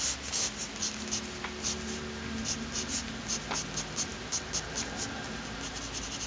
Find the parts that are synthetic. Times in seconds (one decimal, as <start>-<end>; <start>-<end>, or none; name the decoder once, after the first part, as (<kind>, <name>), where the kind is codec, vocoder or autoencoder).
none